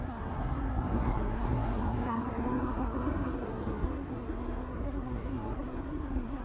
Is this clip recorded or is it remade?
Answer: remade